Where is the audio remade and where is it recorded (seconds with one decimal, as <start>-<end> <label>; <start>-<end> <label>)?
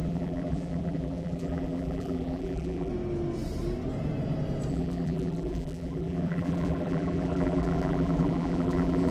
0.0-2.9 remade; 2.9-4.7 recorded; 4.7-9.1 remade